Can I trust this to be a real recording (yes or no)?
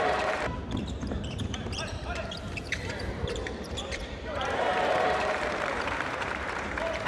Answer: no